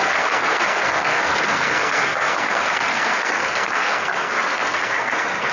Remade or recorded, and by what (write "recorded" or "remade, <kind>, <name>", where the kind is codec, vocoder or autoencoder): remade, codec, SNAC